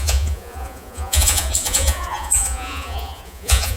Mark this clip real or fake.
fake